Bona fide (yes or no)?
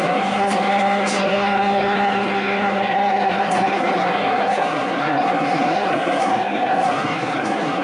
no